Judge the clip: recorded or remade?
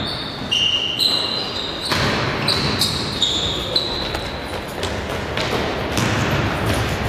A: recorded